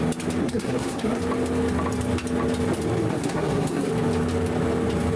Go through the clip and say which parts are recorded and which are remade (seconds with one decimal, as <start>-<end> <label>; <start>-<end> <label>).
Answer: 0.0-0.4 recorded; 0.4-1.2 remade; 1.2-3.1 recorded; 3.1-3.9 remade; 3.9-5.2 recorded